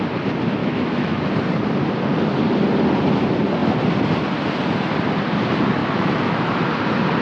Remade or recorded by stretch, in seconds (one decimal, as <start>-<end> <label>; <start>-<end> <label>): 0.0-0.6 recorded; 0.6-1.2 remade; 1.2-5.8 recorded; 5.8-6.5 remade; 6.5-7.2 recorded